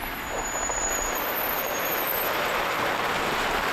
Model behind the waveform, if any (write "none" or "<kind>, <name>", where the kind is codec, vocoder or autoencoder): vocoder, BigVGAN v2